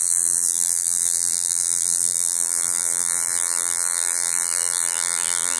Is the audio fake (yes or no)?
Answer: yes